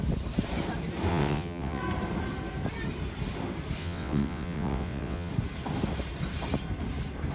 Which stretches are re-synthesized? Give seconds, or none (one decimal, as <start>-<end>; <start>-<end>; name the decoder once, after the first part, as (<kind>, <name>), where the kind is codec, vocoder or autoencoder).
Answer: 1.1-1.8 (vocoder, WaveNeXt); 3.8-5.3